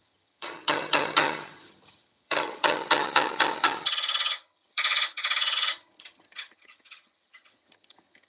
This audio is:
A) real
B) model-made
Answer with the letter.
B